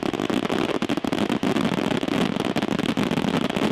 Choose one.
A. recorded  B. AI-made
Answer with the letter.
A